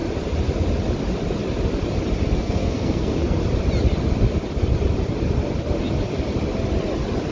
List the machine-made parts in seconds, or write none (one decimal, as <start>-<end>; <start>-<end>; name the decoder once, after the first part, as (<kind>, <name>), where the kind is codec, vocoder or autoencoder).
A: 2.4-3.4 (codec, SNAC)